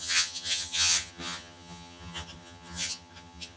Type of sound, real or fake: fake